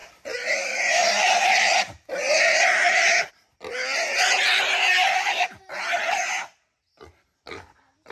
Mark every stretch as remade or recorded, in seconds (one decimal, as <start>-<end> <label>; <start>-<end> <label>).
0.0-3.3 remade; 3.3-4.9 recorded; 4.9-5.6 remade; 5.6-8.1 recorded